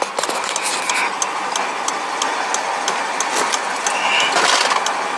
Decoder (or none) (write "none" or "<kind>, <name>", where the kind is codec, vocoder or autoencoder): none